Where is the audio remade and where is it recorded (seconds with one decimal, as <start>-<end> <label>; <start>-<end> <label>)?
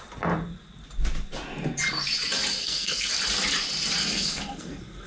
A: 0.0-2.6 recorded; 2.6-3.1 remade; 3.1-4.0 recorded; 4.0-5.1 remade